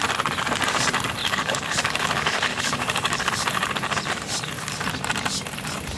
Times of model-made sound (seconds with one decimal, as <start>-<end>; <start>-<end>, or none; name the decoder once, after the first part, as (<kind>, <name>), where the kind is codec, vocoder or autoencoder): 1.2-3.3 (codec, DAC)